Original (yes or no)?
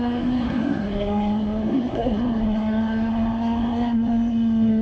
no